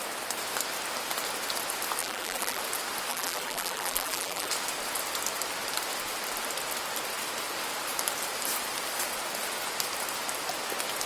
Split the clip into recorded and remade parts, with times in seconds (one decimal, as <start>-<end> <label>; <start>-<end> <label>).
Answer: 0.0-2.0 recorded; 2.0-2.6 remade; 2.6-3.1 recorded; 3.1-4.5 remade; 4.5-11.1 recorded